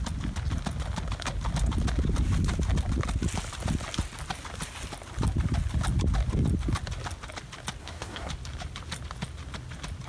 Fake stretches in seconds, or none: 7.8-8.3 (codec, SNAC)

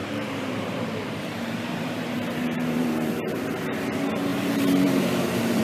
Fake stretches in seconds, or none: 0.0-3.4 (vocoder, BigVGAN v2); 4.3-5.6

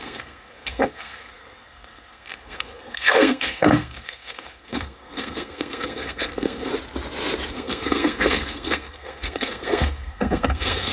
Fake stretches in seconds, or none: 0.0-6.7 (codec, SNAC); 7.5-10.9

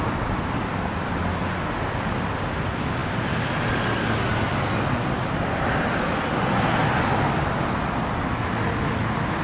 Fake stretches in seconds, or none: none